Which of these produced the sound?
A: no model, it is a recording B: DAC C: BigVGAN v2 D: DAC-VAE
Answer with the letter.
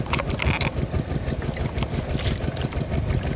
A